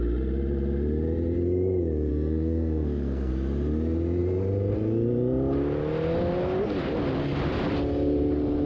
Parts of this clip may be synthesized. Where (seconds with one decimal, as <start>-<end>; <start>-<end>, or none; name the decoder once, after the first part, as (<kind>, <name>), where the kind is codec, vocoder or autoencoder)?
2.1-3.3 (codec, SNAC)